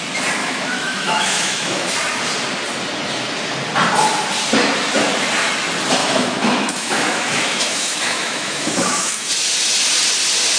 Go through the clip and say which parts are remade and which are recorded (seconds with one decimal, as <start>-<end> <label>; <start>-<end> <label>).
0.0-0.4 recorded; 0.4-1.9 remade; 1.9-6.0 recorded; 6.0-9.3 remade; 9.3-10.6 recorded